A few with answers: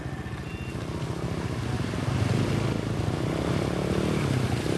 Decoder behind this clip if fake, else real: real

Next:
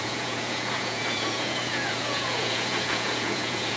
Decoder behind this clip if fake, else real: fake, vocoder, Vocos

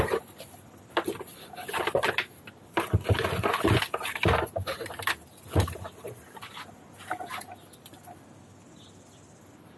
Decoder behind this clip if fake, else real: real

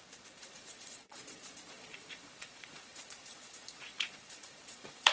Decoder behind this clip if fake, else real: fake, vocoder, Vocos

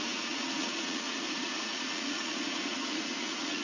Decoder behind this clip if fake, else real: fake, vocoder, Vocos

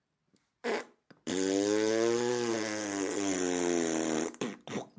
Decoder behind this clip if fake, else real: real